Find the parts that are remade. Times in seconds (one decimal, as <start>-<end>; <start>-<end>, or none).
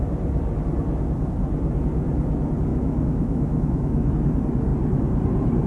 2.7-4.1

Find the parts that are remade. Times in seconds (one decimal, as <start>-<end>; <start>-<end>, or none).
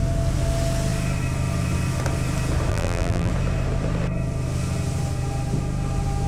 2.7-3.3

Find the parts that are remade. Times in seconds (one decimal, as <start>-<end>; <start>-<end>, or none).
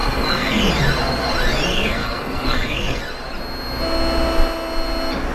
0.0-0.7; 1.7-3.0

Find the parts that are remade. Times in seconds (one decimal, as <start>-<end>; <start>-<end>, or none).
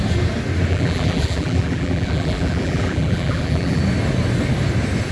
0.7-3.8